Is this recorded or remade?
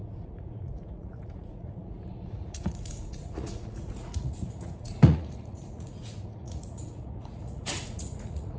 remade